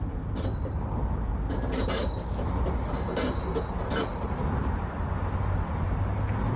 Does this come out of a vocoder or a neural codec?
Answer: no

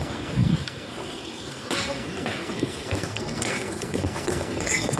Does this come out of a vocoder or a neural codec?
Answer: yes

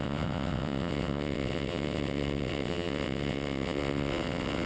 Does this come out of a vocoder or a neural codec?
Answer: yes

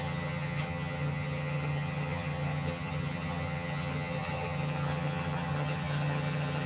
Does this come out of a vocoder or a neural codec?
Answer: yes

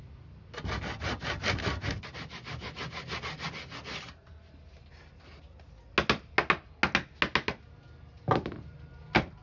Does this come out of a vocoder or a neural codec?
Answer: no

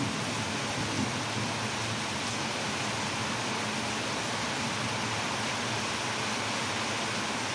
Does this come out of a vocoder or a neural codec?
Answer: no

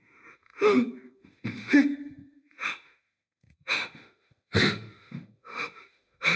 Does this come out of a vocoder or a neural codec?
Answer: yes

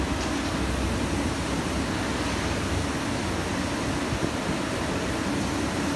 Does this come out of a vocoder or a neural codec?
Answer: no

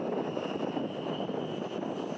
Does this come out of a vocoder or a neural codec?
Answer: no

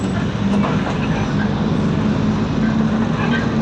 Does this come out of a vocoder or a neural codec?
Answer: no